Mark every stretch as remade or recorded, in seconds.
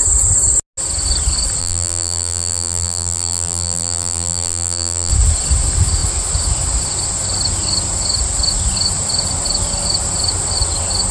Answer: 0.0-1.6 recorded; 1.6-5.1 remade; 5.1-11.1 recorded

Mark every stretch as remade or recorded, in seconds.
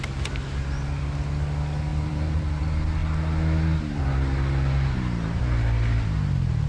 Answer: 0.0-1.9 recorded; 1.9-2.6 remade; 2.6-6.7 recorded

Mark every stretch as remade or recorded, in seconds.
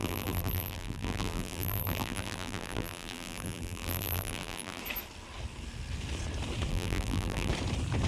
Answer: 0.0-4.8 remade; 4.8-6.7 recorded; 6.7-7.5 remade; 7.5-8.1 recorded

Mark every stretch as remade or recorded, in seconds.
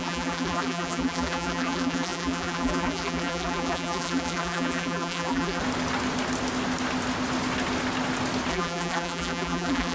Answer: 0.0-5.6 remade; 5.6-8.5 recorded; 8.5-9.9 remade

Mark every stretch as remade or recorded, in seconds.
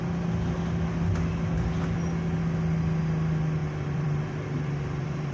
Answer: 0.0-3.6 recorded; 3.6-5.3 remade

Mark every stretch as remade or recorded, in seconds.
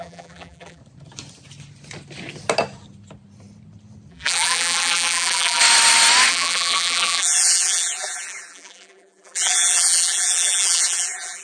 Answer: 0.0-0.8 remade; 0.8-4.1 recorded; 4.1-5.6 remade; 5.6-6.3 recorded; 6.3-11.4 remade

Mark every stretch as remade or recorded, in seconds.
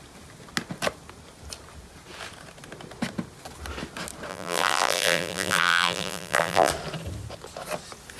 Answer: 0.0-4.3 recorded; 4.3-6.7 remade; 6.7-8.2 recorded